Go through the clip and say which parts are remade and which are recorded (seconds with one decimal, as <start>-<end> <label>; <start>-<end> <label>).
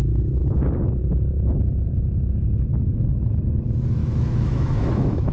0.0-4.0 recorded; 4.0-5.3 remade